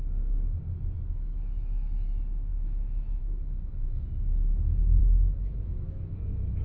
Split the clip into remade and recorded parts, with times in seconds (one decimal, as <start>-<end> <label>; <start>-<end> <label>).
0.0-2.5 recorded; 2.5-3.2 remade; 3.2-5.0 recorded; 5.0-5.6 remade; 5.6-6.6 recorded